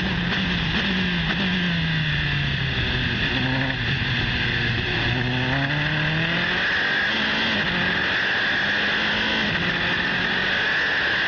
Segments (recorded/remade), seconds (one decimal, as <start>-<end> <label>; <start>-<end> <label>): 0.0-11.3 recorded